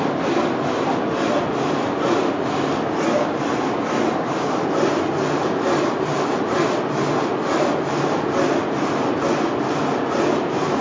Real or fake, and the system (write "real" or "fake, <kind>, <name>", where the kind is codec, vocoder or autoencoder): real